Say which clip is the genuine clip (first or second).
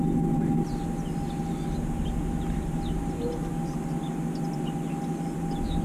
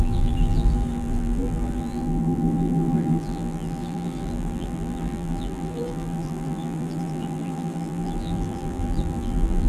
first